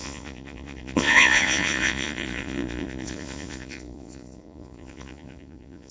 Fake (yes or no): yes